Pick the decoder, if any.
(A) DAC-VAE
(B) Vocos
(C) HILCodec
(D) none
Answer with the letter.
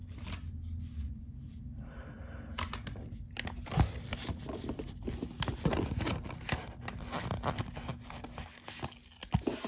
D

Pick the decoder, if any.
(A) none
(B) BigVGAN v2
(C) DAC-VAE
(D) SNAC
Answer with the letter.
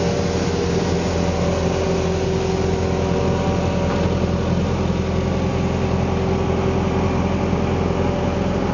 A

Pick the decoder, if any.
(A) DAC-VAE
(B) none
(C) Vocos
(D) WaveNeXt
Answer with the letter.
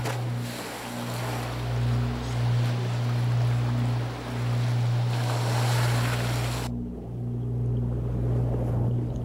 B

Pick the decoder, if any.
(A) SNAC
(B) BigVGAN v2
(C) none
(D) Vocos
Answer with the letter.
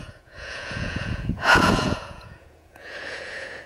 D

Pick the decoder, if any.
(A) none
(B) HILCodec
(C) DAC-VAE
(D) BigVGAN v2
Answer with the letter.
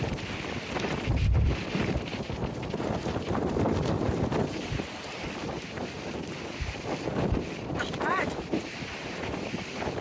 D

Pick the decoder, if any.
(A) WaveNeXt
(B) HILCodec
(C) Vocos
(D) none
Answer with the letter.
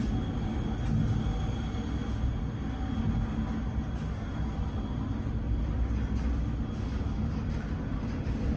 D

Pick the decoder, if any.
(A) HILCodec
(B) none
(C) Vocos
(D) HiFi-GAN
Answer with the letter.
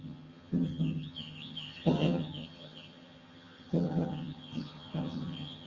D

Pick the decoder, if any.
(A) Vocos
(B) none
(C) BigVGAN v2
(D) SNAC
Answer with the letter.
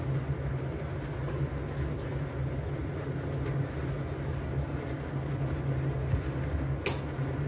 B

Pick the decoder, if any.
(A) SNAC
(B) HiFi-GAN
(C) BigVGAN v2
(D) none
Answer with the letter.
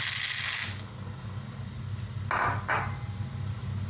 D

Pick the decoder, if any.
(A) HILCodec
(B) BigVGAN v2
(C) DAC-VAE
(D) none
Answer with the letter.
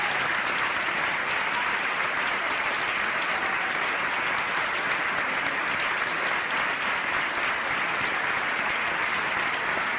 D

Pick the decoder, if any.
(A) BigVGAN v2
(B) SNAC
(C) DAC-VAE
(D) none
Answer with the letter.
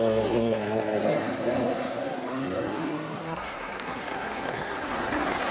B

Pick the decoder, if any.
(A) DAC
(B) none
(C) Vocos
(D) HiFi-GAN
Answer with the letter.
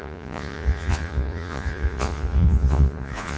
C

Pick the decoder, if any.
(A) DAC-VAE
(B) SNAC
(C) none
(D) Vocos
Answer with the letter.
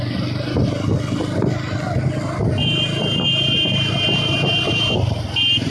C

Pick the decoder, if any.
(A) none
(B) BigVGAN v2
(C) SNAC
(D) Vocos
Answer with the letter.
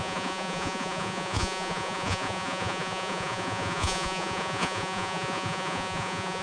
D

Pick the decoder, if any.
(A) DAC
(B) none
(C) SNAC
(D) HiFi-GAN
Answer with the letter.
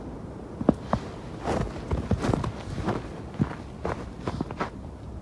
B